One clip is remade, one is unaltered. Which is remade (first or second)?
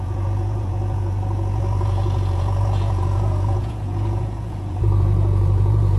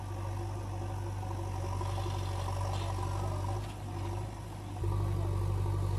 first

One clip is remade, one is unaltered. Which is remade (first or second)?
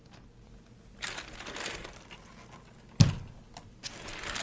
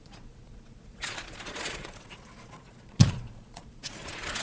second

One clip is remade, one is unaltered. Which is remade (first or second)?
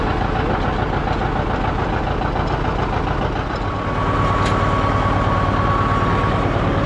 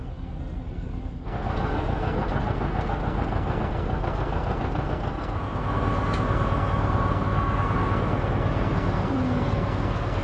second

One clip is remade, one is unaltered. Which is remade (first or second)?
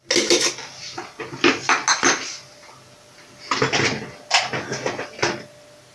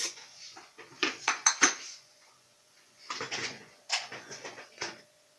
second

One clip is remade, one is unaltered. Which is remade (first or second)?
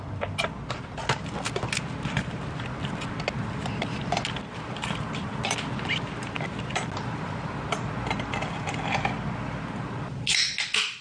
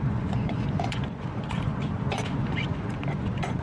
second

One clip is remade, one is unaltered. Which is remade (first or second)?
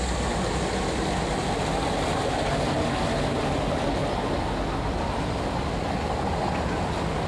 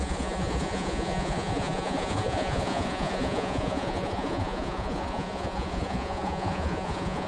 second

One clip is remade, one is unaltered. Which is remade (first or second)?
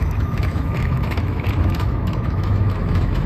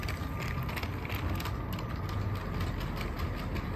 first